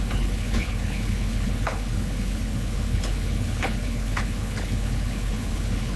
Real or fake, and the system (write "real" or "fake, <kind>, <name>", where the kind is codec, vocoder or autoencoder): fake, codec, HILCodec